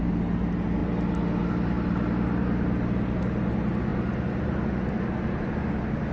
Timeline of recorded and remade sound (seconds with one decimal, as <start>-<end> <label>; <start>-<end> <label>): 0.0-6.1 recorded